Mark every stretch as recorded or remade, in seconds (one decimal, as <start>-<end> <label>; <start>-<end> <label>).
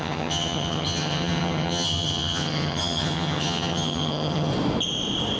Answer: 0.0-4.5 remade; 4.5-5.4 recorded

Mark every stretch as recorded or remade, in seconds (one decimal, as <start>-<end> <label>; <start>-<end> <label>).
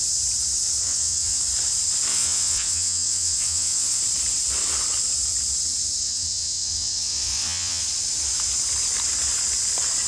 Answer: 0.0-0.8 recorded; 0.8-1.4 remade; 1.4-2.1 recorded; 2.1-4.0 remade; 4.0-6.0 recorded; 6.0-7.8 remade; 7.8-10.1 recorded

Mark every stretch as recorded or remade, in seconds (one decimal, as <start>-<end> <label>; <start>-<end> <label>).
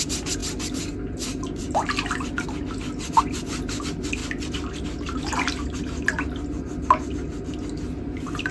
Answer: 0.0-8.5 recorded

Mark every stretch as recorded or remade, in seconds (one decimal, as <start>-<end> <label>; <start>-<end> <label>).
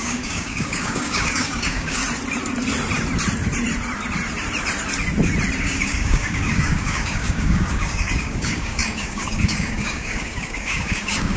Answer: 0.0-2.0 remade; 2.0-5.6 recorded; 5.6-11.4 remade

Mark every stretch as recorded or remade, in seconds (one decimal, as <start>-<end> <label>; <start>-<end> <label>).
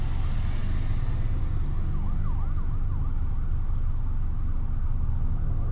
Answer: 0.0-5.7 recorded